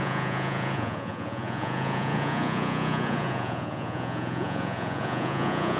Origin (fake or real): fake